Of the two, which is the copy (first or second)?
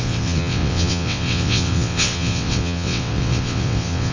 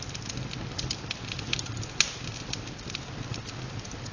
first